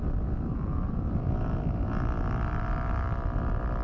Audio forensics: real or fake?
real